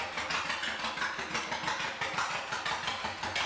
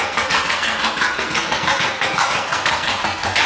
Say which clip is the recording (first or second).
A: first